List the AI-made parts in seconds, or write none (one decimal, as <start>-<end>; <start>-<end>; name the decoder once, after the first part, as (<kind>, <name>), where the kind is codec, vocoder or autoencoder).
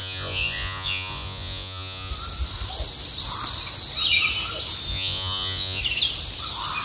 0.0-2.1 (vocoder, Vocos); 4.9-5.8